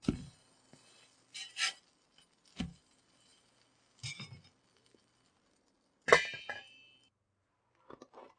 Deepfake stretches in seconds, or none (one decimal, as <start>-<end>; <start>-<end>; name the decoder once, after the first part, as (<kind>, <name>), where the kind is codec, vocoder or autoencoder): none

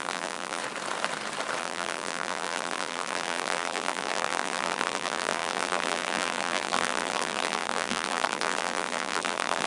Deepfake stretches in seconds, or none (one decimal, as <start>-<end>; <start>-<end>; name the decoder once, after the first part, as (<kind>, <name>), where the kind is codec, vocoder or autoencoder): 0.0-0.6 (vocoder, BigVGAN v2); 1.6-9.7